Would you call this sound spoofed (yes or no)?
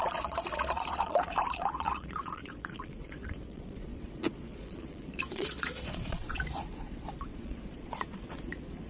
yes